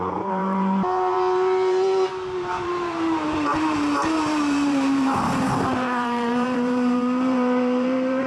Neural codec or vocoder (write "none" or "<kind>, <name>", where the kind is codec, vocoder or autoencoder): vocoder, BigVGAN v2